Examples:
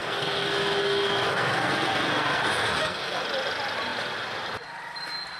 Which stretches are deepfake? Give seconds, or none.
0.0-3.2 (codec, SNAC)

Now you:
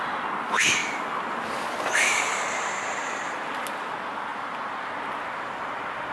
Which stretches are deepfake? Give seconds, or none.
none

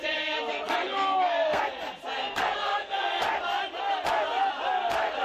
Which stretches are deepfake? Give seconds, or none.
0.5-1.6 (codec, SNAC); 2.2-3.2

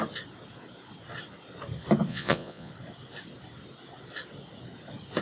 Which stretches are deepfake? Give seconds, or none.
2.1-2.7 (vocoder, Vocos)

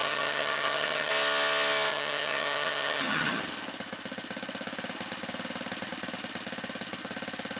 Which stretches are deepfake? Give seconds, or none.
0.0-1.1 (vocoder, HiFi-GAN); 1.9-3.4

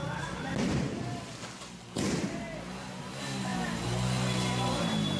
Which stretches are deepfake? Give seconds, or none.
none